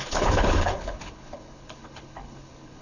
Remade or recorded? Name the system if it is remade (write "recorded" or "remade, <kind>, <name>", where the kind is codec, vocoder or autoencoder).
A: remade, codec, HILCodec